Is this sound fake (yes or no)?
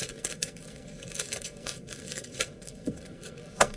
yes